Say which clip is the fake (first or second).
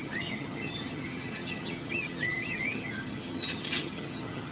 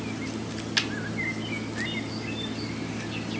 first